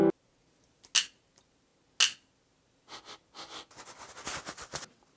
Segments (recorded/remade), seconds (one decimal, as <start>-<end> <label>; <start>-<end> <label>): 0.0-5.2 recorded